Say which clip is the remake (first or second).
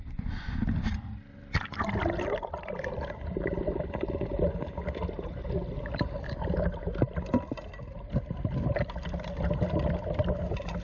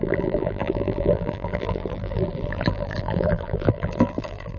second